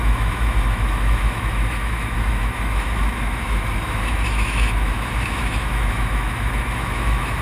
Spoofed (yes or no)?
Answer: yes